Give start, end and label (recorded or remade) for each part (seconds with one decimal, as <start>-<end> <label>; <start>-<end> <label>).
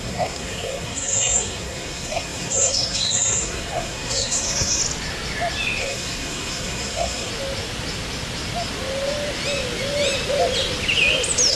0.0-4.8 remade; 4.8-5.8 recorded; 5.8-7.3 remade; 7.3-11.5 recorded